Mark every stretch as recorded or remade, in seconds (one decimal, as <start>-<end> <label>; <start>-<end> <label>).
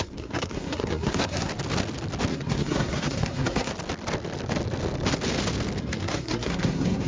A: 0.0-1.5 remade; 1.5-2.3 recorded; 2.3-3.7 remade; 3.7-5.8 recorded; 5.8-7.1 remade